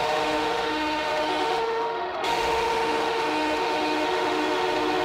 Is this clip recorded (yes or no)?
no